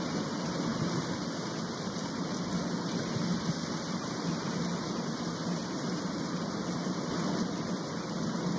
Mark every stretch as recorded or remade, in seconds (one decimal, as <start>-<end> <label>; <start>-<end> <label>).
0.0-8.6 recorded

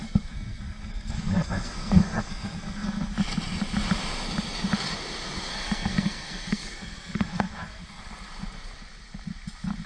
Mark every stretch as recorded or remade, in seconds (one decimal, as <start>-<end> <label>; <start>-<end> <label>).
0.0-3.1 remade; 3.1-5.5 recorded; 5.5-8.0 remade; 8.0-9.9 recorded

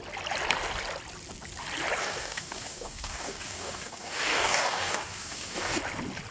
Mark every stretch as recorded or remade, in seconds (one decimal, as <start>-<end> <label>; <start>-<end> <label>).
0.0-2.0 recorded; 2.0-5.8 remade; 5.8-6.3 recorded

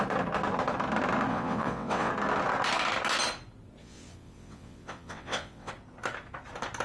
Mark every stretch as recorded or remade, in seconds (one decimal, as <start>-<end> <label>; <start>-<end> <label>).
0.0-1.3 recorded; 1.3-2.1 remade; 2.1-3.8 recorded; 3.8-5.7 remade; 5.7-6.8 recorded

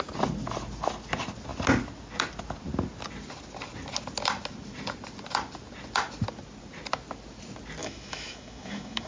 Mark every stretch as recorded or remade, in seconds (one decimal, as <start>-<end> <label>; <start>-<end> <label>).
0.0-7.8 recorded; 7.8-9.1 remade

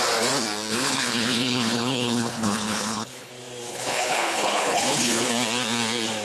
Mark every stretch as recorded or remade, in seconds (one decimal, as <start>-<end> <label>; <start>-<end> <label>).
0.0-0.7 recorded; 0.7-3.3 remade; 3.3-3.7 recorded; 3.7-5.3 remade; 5.3-6.2 recorded

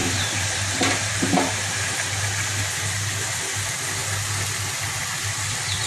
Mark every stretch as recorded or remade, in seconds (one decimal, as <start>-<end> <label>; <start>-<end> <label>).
0.0-3.4 remade; 3.4-5.9 recorded